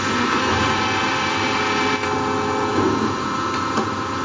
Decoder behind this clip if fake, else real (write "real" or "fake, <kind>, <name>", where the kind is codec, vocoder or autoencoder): real